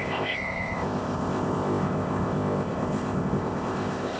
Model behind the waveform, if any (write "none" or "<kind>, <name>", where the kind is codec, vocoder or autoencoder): codec, ZipCodec